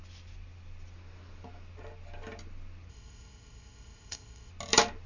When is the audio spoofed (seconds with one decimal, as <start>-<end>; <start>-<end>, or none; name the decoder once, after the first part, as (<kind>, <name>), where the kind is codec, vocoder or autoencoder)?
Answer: 2.9-4.5 (codec, ZipCodec)